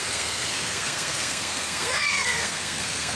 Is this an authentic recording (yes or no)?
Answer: no